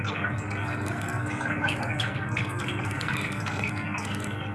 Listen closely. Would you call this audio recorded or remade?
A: remade